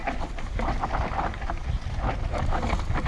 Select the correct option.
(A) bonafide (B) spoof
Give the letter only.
A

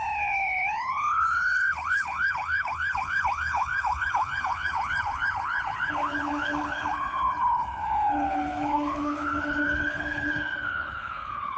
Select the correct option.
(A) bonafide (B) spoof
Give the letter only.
B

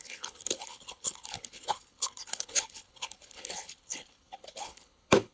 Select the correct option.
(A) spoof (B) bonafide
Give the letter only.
A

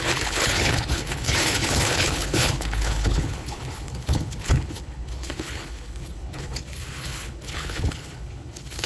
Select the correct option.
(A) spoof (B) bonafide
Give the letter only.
A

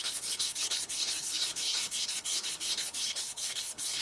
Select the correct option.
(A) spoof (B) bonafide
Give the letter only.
A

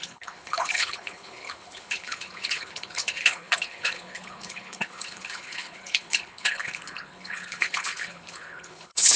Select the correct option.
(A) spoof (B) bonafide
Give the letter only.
A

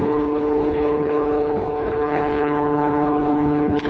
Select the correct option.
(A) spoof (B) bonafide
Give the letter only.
A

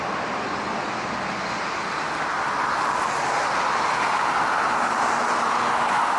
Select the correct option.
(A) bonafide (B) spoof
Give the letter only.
A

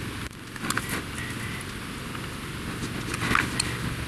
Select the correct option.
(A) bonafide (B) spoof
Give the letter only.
A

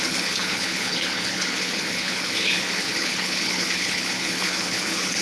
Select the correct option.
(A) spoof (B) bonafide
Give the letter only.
A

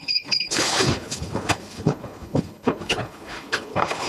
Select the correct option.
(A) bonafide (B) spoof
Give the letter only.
B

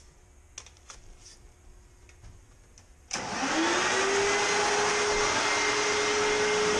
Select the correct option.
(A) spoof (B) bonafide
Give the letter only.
B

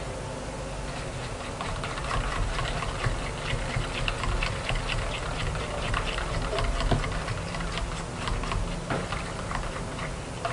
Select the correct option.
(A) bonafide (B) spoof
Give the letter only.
A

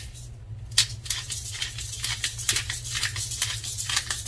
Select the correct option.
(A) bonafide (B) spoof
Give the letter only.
A